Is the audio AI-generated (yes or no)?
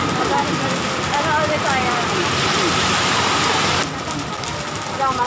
no